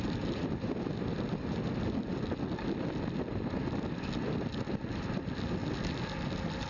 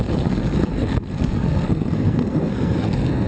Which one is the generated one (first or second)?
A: second